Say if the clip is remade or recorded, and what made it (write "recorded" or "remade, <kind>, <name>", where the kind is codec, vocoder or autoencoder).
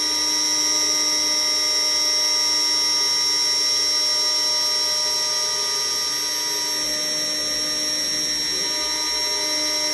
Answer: recorded